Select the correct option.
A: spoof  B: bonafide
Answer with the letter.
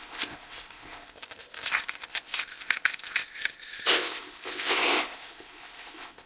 A